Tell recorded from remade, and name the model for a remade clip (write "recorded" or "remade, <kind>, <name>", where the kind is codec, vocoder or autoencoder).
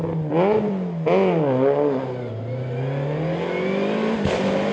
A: recorded